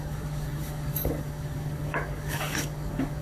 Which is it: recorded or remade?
remade